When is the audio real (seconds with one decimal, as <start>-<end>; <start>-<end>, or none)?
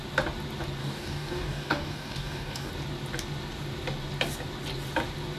0.0-0.8; 2.7-5.4